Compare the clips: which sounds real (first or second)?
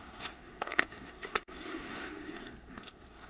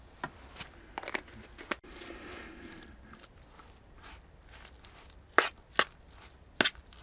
second